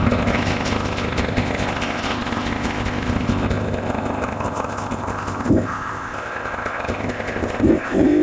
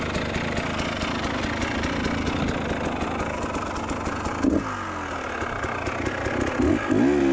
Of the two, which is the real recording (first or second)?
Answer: second